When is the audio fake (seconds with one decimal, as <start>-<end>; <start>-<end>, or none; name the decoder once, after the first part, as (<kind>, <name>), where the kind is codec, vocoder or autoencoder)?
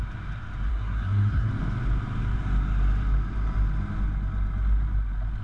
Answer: 0.7-1.5 (codec, SNAC)